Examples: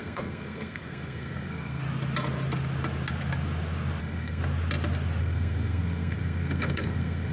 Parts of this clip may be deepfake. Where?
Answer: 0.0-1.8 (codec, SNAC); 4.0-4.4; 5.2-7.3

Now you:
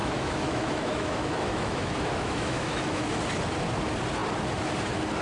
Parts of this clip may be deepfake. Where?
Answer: 0.0-3.1 (autoencoder, DAC-VAE)

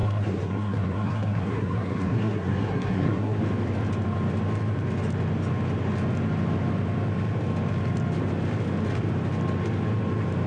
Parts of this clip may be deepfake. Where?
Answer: 0.0-3.4 (codec, SNAC)

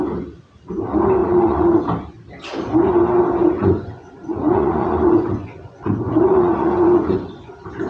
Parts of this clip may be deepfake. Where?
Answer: 1.2-1.8 (vocoder, Vocos); 3.4-7.5

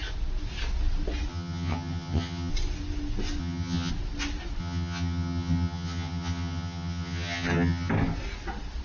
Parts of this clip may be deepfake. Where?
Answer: 1.3-2.5 (vocoder, HiFi-GAN); 3.4-3.9; 4.6-7.9

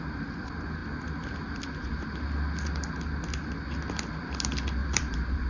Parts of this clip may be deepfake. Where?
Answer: 4.8-5.5 (vocoder, BigVGAN v2)

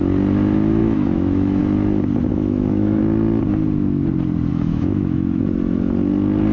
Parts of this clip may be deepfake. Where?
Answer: 0.8-1.6 (autoencoder, DAC-VAE); 2.3-3.0; 4.5-5.4